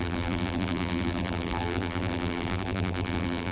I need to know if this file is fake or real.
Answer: fake